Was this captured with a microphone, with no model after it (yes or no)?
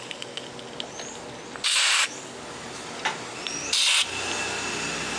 yes